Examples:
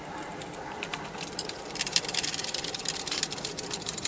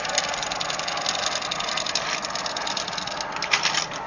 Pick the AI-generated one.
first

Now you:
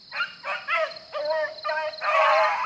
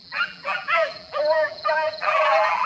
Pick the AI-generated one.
second